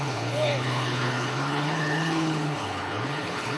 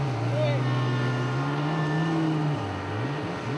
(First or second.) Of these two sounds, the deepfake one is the first